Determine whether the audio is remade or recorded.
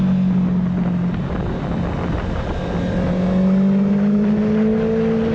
recorded